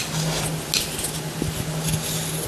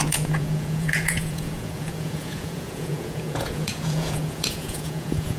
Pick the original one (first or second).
first